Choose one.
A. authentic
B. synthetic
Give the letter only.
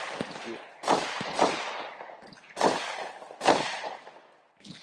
A